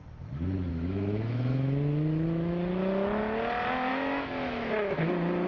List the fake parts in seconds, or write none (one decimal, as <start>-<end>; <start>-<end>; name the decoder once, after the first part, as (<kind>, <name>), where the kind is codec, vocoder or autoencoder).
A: 0.7-3.2 (autoencoder, DAC-VAE); 3.9-5.1